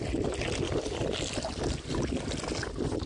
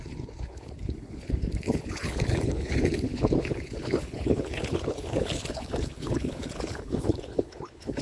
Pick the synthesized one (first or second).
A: second